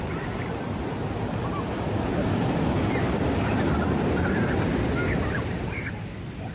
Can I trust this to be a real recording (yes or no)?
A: yes